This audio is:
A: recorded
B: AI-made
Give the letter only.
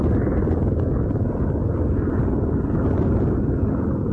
A